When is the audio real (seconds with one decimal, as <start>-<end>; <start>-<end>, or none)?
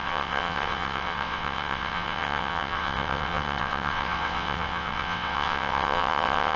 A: none